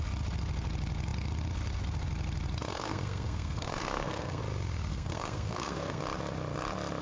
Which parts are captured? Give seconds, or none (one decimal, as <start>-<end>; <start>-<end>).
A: 0.0-2.7; 4.4-4.9; 6.0-7.0